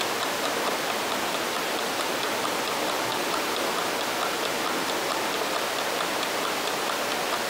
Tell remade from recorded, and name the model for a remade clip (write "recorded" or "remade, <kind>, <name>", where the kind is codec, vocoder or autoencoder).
recorded